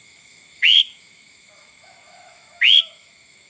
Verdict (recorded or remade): remade